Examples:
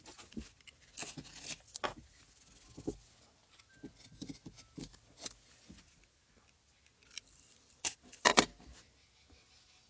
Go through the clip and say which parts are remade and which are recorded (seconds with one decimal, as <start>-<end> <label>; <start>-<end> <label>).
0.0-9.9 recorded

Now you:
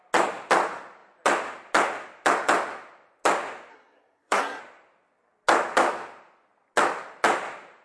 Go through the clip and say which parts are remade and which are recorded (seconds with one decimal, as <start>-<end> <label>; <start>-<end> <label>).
0.0-3.7 recorded; 3.7-4.6 remade; 4.6-7.8 recorded

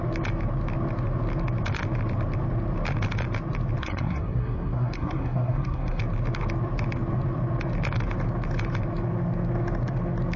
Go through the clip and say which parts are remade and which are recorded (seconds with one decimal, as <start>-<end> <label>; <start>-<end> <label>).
0.0-3.8 recorded; 3.8-6.0 remade; 6.0-10.4 recorded

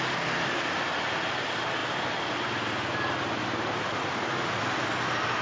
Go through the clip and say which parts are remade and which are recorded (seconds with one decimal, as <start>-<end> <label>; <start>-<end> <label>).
0.0-5.4 recorded